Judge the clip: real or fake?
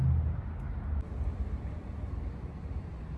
real